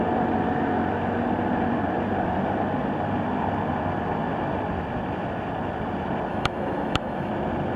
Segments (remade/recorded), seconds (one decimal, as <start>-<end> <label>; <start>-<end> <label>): 0.0-6.3 recorded; 6.3-7.3 remade; 7.3-7.8 recorded